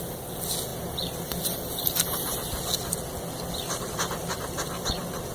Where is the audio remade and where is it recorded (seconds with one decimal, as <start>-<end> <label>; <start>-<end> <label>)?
0.0-0.7 recorded; 0.7-1.8 remade; 1.8-5.3 recorded